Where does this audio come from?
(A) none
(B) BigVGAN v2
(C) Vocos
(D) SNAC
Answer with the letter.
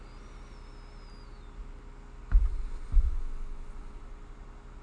A